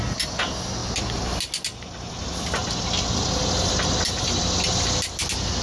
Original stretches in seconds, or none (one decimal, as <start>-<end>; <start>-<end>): 0.0-5.6